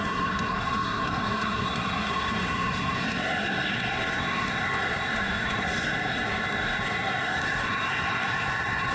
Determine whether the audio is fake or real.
fake